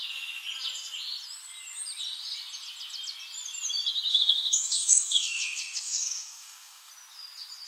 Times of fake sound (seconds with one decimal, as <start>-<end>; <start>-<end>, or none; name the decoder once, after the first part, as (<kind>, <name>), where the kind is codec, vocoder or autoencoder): 4.1-6.9 (codec, DAC)